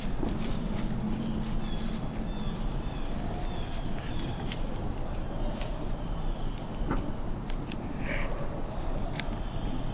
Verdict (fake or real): real